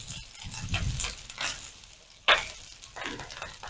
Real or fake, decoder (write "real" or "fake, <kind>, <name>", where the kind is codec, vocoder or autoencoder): real